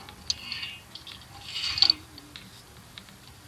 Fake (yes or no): no